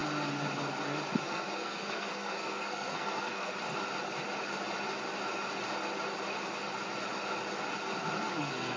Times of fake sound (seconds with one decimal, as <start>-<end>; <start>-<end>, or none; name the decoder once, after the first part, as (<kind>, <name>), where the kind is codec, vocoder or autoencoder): 1.2-3.5 (codec, SNAC); 8.4-8.8